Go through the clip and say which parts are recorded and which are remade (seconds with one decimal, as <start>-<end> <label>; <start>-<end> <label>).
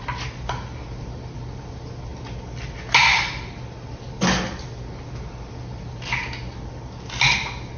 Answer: 0.0-7.8 recorded